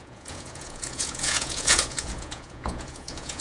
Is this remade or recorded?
remade